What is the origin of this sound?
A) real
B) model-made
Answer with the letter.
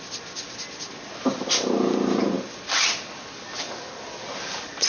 A